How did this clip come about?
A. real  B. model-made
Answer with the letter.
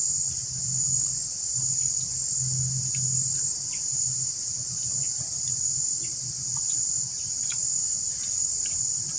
A